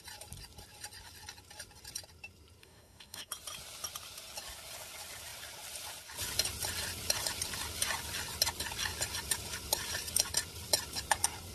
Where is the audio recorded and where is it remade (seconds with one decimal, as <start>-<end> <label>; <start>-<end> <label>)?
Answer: 0.0-2.6 recorded; 2.6-3.3 remade; 3.3-11.5 recorded